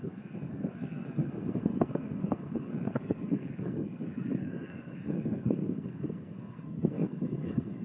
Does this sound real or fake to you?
fake